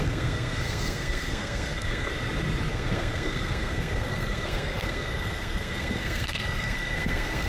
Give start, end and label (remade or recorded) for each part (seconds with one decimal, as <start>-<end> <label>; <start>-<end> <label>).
0.0-2.1 remade; 2.1-2.7 recorded; 2.7-7.5 remade